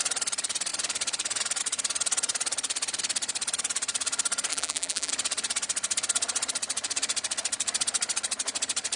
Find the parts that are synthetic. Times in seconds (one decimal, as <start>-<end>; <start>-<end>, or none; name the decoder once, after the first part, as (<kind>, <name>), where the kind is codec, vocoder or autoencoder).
4.5-5.1 (vocoder, BigVGAN v2)